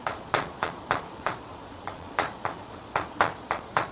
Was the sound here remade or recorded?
remade